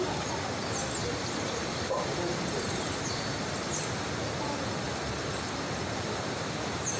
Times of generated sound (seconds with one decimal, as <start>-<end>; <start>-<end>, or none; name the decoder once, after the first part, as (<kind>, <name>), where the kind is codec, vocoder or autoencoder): 1.0-3.8 (vocoder, BigVGAN v2)